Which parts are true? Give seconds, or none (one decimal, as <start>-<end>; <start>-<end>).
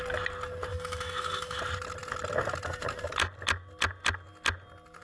0.0-0.7; 1.6-5.0